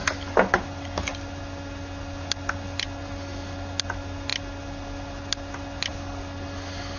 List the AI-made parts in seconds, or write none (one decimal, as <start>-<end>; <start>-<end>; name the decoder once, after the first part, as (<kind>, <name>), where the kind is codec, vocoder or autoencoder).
none